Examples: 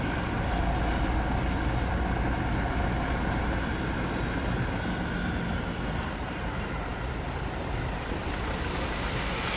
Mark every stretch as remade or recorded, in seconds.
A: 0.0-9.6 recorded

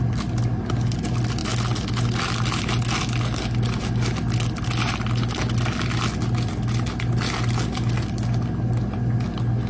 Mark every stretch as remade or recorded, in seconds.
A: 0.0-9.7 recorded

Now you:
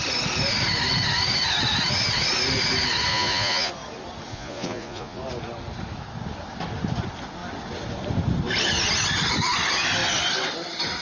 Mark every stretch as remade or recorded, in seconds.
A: 0.0-3.1 recorded; 3.1-3.7 remade; 3.7-4.3 recorded; 4.3-5.2 remade; 5.2-11.0 recorded

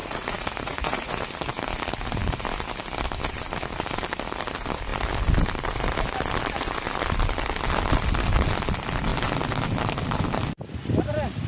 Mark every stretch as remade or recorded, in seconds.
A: 0.0-1.2 remade; 1.2-11.5 recorded